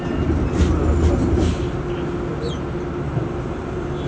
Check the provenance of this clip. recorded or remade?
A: recorded